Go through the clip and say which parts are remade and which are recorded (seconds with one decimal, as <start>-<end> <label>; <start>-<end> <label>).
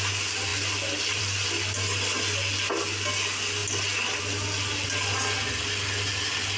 0.0-6.6 recorded